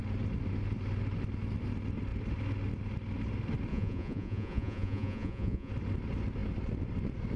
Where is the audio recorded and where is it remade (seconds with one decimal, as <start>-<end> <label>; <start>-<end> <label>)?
0.0-3.7 recorded; 3.7-5.7 remade; 5.7-7.4 recorded